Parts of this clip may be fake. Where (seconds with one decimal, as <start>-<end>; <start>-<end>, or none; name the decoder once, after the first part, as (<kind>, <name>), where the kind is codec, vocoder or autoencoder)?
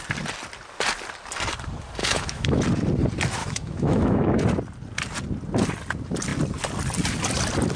2.0-2.6 (autoencoder, DAC-VAE); 3.4-4.4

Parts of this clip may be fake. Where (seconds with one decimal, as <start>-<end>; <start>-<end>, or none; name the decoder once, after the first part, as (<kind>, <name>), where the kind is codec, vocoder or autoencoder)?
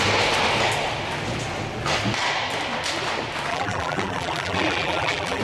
3.5-5.4 (vocoder, BigVGAN v2)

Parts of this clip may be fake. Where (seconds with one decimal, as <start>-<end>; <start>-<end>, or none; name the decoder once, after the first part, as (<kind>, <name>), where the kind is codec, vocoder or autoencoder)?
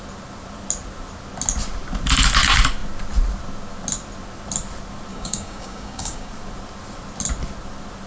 5.1-6.3 (codec, DAC)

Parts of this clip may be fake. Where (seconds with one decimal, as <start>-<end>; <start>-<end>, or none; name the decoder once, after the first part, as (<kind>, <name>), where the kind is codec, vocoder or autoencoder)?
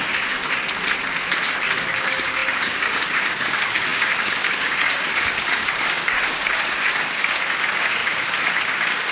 0.0-0.4 (codec, DAC); 2.0-9.1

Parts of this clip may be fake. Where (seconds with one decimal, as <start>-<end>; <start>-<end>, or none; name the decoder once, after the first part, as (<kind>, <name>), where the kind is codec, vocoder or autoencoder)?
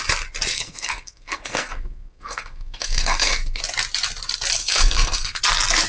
0.5-3.6 (codec, SNAC); 4.6-5.4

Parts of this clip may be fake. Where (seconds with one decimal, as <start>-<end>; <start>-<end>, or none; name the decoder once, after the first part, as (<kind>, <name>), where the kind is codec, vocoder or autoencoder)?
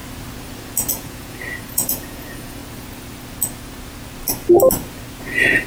0.9-2.6 (vocoder, Vocos); 5.2-5.7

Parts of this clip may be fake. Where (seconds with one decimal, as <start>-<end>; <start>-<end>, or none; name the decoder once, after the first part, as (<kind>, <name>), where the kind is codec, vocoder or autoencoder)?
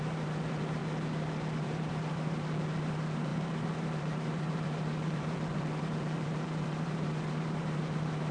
0.0-0.8 (vocoder, BigVGAN v2); 1.6-8.3